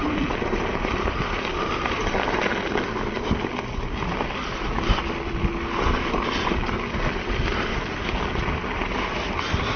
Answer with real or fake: real